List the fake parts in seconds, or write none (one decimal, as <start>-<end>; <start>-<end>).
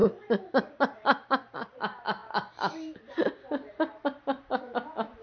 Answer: 0.0-1.8; 2.2-3.1; 3.6-4.6